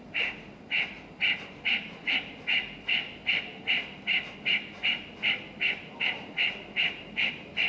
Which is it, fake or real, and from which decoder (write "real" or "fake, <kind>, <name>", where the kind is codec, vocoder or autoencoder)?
fake, vocoder, BigVGAN v2